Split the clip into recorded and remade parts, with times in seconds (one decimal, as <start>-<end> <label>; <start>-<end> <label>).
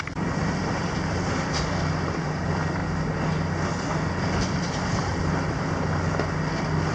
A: 0.0-2.8 remade; 2.8-4.4 recorded; 4.4-5.1 remade; 5.1-6.9 recorded